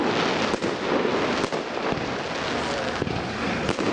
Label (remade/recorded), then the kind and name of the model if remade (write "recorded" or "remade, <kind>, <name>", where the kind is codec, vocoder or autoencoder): recorded